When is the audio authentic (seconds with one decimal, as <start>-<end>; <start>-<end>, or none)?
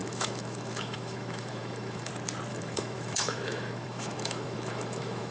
2.1-2.5